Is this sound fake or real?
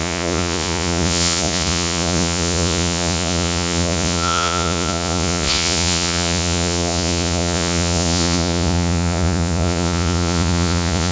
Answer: fake